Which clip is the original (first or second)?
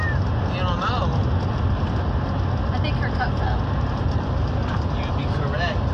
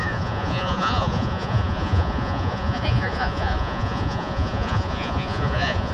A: first